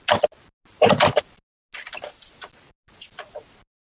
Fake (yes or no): no